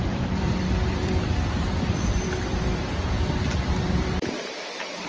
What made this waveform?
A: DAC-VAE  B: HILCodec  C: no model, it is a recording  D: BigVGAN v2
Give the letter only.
D